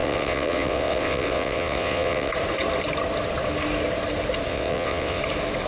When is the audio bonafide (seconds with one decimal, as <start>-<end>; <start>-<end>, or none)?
2.3-4.5; 5.2-5.7